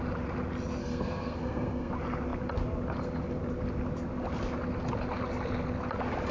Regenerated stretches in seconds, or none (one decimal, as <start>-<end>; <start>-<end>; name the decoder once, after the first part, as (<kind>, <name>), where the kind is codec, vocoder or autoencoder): 0.8-1.9 (codec, SNAC)

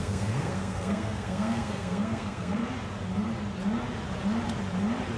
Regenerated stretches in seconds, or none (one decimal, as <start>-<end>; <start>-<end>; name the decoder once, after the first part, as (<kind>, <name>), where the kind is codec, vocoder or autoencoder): 0.0-2.6 (codec, SNAC)

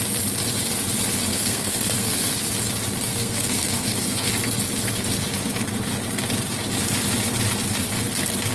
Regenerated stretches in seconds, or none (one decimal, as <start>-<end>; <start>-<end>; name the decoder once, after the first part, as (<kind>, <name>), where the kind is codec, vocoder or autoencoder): 1.3-2.3 (codec, SNAC); 3.1-4.3